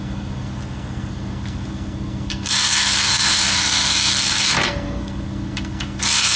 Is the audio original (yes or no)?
no